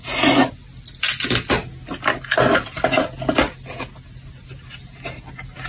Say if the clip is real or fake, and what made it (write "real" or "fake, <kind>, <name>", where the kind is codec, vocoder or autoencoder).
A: real